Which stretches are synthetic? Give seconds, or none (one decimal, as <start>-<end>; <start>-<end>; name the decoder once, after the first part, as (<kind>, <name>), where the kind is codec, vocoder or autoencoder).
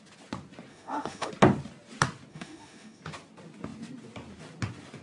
0.7-1.3 (autoencoder, DAC-VAE); 2.3-3.0